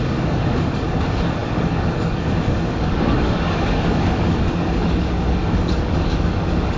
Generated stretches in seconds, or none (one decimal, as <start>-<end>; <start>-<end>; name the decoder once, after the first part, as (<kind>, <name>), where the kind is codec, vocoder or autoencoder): 0.0-6.8 (codec, DAC)